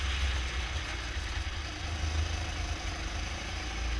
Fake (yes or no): no